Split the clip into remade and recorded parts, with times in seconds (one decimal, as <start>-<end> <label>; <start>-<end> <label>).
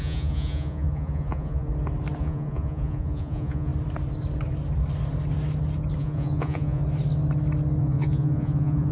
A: 0.0-1.7 remade; 1.7-2.2 recorded; 2.2-3.7 remade; 3.7-6.0 recorded; 6.0-6.8 remade; 6.8-7.8 recorded; 7.8-8.9 remade